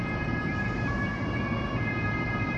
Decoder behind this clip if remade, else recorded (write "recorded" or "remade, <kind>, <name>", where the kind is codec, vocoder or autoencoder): recorded